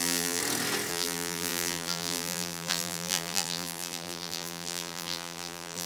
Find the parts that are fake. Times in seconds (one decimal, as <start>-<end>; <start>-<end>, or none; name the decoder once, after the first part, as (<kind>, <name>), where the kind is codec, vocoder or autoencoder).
0.0-0.4 (vocoder, BigVGAN v2); 0.9-5.9